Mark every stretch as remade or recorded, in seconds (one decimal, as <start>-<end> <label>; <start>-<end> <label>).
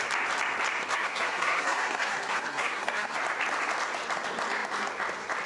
0.0-0.9 recorded; 0.9-3.2 remade; 3.2-5.5 recorded